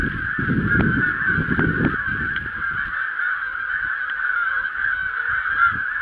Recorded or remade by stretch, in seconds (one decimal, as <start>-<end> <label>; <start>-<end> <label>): 0.0-6.0 recorded